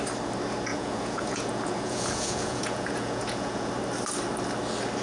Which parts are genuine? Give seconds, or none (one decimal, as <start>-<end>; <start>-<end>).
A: 0.0-0.7; 3.7-5.0